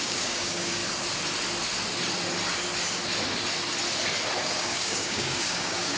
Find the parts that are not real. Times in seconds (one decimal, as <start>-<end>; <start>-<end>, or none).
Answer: 0.0-0.8; 4.4-6.0

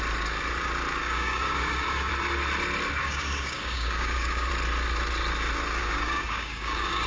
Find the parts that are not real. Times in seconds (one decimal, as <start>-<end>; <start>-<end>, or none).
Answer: 1.0-2.1; 3.0-4.5; 5.8-7.1

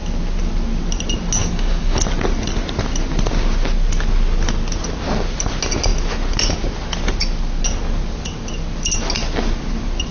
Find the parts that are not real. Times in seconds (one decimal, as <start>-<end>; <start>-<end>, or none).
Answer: 1.4-2.0

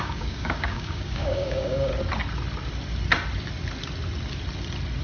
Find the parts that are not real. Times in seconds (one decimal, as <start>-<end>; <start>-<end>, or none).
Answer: 0.0-1.9